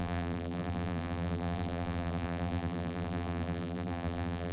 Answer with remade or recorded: remade